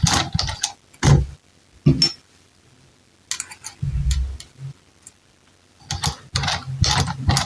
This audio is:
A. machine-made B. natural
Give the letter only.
B